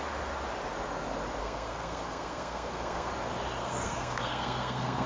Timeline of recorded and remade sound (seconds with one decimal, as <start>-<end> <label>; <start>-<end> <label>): 0.0-1.4 recorded; 1.4-3.1 remade; 3.1-3.6 recorded; 3.6-5.1 remade